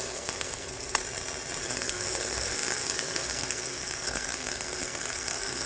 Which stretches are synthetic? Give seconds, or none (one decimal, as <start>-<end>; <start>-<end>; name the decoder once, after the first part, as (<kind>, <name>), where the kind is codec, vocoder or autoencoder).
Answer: 0.0-1.0 (codec, SNAC); 1.6-5.7